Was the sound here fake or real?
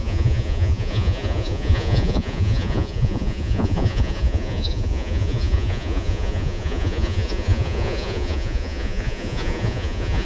fake